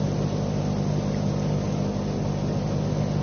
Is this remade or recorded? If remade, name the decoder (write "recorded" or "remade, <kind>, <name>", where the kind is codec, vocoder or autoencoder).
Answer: recorded